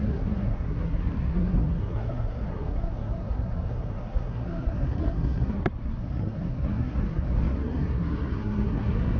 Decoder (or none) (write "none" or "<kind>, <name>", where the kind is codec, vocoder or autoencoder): codec, SNAC